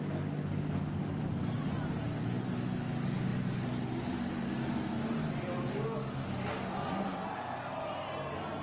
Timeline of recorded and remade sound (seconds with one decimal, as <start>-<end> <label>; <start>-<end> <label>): 0.0-8.6 recorded